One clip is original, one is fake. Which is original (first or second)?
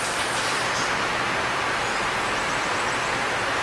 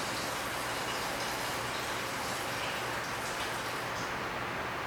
second